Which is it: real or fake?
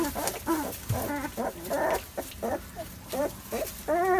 real